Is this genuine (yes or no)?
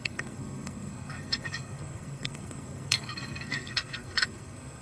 no